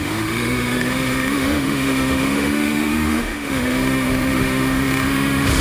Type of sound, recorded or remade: remade